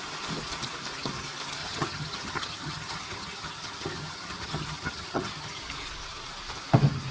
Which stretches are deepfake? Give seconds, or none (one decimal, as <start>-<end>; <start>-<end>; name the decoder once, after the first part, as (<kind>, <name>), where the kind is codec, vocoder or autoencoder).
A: 1.6-5.6 (vocoder, HiFi-GAN)